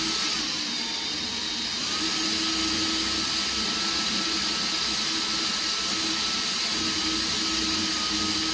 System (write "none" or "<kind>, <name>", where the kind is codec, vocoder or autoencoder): none